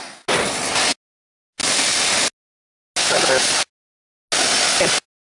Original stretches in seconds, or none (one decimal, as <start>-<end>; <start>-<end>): 0.0-5.2